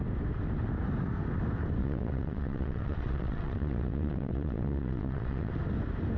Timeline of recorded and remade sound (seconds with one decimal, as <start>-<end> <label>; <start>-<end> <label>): 0.0-1.8 recorded; 1.8-5.5 remade; 5.5-6.2 recorded